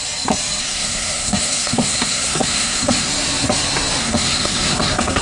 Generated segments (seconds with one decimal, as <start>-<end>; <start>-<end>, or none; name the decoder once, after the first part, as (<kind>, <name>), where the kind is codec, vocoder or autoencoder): 0.6-3.1 (codec, SNAC); 4.0-5.2